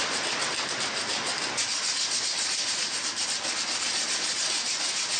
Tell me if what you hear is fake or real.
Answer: real